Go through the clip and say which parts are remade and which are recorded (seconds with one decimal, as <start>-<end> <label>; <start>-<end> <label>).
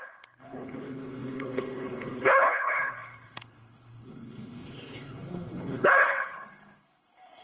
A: 0.0-7.4 remade